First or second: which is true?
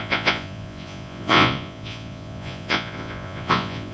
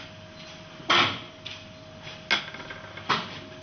second